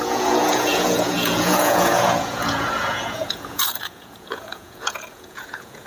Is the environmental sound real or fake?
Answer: fake